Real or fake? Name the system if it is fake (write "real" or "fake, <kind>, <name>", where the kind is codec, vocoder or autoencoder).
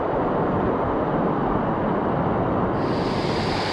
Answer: real